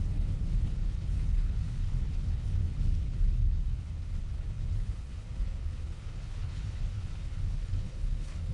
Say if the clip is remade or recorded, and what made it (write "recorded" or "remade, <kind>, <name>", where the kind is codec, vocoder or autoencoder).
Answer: remade, codec, HILCodec